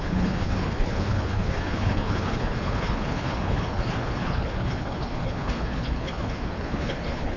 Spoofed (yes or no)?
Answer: yes